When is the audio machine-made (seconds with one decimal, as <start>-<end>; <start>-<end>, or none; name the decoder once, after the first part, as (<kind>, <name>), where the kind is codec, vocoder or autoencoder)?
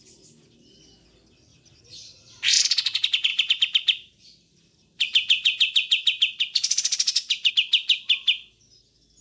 1.5-2.6 (vocoder, BigVGAN v2); 3.3-7.5